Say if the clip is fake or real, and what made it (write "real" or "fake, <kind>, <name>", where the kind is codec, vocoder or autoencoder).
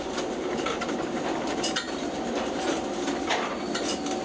real